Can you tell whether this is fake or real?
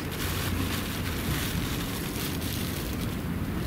fake